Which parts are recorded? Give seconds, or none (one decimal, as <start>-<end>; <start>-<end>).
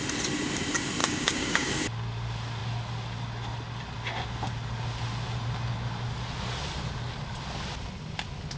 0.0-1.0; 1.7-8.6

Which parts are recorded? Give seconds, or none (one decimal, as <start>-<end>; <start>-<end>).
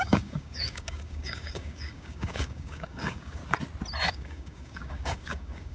3.4-4.1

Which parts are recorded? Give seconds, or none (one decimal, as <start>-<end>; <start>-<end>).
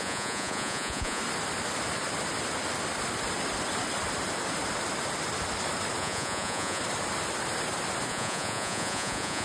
1.2-6.0; 6.8-8.1